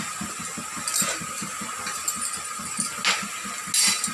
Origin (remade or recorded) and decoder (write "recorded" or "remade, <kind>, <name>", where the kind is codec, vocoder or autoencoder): recorded